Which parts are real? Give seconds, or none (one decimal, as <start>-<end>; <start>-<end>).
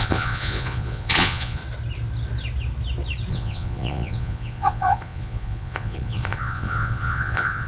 1.6-3.3